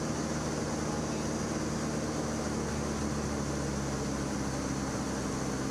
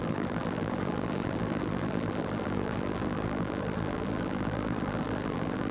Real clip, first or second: first